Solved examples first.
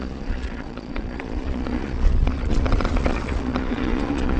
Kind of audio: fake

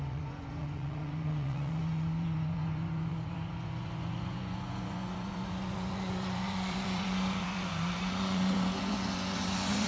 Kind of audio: fake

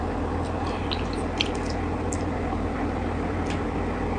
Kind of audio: real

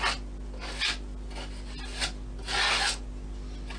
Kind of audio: real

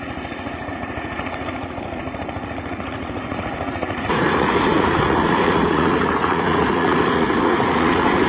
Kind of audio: fake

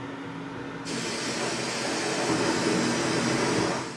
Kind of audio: real